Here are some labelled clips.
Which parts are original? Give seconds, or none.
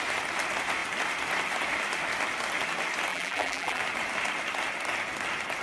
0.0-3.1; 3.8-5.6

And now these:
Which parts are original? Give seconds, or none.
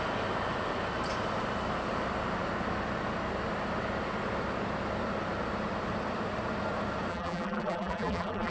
0.0-7.1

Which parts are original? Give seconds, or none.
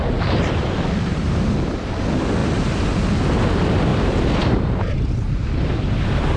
0.0-1.1; 1.9-2.4; 2.9-3.9; 5.0-6.4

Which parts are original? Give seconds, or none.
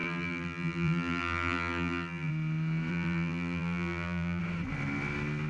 2.3-2.9; 4.4-5.5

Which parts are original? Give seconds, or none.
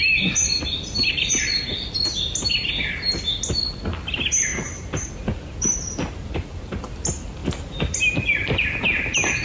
0.0-4.5; 5.1-7.4; 8.6-9.4